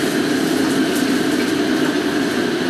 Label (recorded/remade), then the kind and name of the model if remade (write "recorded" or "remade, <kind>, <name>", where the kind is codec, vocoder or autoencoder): recorded